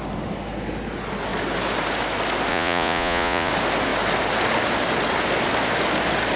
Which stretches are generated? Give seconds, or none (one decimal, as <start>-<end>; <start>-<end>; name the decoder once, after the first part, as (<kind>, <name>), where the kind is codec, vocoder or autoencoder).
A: 2.5-3.5 (vocoder, Vocos)